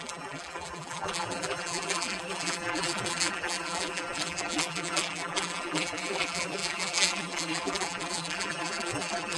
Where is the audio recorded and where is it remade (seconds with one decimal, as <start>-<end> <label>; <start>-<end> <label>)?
0.0-9.4 remade

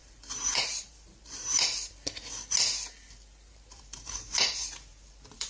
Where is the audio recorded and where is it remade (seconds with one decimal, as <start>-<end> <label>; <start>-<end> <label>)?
0.0-1.9 remade; 1.9-3.5 recorded; 3.5-5.5 remade

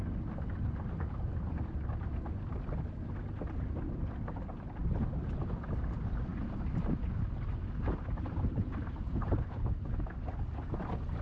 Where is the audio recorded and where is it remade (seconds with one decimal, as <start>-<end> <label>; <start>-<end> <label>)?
0.0-6.3 recorded; 6.3-9.6 remade; 9.6-11.2 recorded

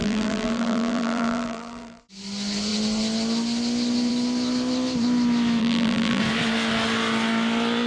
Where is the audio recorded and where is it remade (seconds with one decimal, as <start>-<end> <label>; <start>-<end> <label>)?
0.0-2.0 remade; 2.0-5.6 recorded; 5.6-6.2 remade; 6.2-7.9 recorded

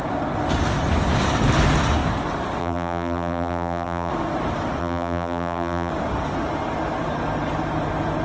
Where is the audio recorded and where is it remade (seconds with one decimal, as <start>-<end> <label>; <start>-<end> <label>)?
0.0-2.6 recorded; 2.6-4.1 remade; 4.1-4.8 recorded; 4.8-5.9 remade; 5.9-8.2 recorded

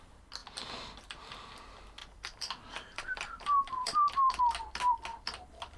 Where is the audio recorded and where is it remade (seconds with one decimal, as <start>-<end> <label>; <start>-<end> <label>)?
0.0-2.0 recorded; 2.0-4.4 remade; 4.4-5.1 recorded; 5.1-5.8 remade